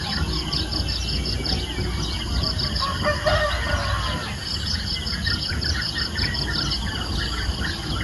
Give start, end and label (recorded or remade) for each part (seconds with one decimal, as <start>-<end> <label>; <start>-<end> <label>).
0.0-8.0 recorded